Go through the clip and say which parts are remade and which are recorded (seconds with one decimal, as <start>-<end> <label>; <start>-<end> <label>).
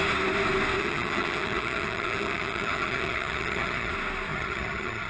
0.0-0.8 recorded; 0.8-3.9 remade; 3.9-4.3 recorded; 4.3-5.1 remade